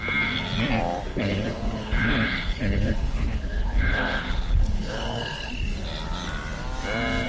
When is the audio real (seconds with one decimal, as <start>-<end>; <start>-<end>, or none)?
0.0-1.1; 5.5-7.3